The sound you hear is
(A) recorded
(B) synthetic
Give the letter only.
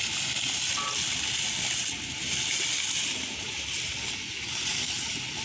A